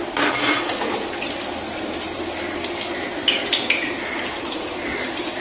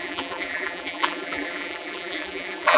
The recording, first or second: first